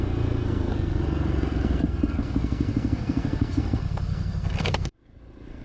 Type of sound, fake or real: fake